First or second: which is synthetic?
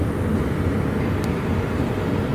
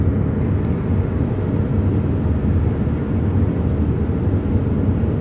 first